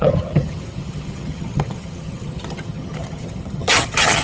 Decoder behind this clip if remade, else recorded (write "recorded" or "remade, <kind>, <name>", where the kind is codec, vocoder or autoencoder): remade, vocoder, HiFi-GAN